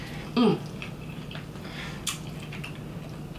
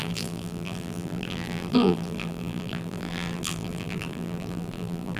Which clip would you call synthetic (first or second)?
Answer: second